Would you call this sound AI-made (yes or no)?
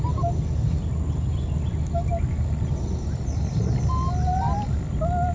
no